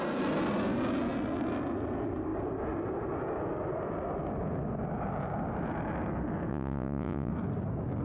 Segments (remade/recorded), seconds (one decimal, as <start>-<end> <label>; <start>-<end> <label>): 0.0-6.5 recorded; 6.5-7.3 remade; 7.3-8.0 recorded